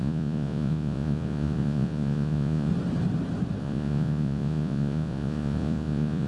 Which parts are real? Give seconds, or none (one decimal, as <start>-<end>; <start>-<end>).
2.7-3.6